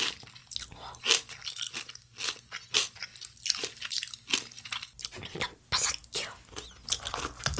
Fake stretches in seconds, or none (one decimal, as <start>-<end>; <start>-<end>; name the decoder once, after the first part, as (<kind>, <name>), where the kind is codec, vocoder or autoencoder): none